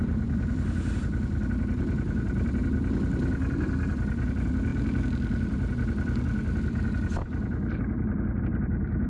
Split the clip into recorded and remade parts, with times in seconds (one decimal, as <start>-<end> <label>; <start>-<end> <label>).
0.0-9.1 recorded

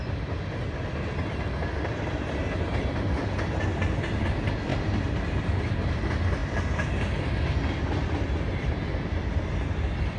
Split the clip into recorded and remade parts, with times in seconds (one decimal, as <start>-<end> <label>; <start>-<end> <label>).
0.0-10.2 recorded

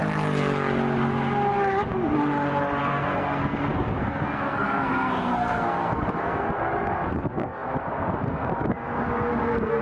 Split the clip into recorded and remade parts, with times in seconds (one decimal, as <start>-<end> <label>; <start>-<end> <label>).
0.0-2.8 recorded; 2.8-9.8 remade

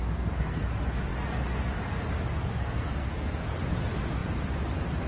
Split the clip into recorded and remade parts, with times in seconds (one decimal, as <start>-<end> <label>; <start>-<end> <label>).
0.0-0.6 remade; 0.6-2.5 recorded; 2.5-3.4 remade; 3.4-5.1 recorded

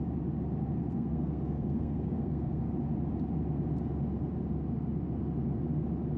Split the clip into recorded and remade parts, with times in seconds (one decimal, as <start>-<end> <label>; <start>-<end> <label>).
0.0-0.8 recorded; 0.8-2.6 remade; 2.6-6.2 recorded

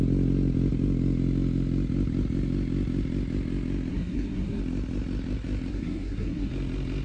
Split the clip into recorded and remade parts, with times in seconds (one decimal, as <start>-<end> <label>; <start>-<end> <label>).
0.0-3.9 recorded; 3.9-4.6 remade; 4.6-5.7 recorded; 5.7-6.5 remade; 6.5-7.0 recorded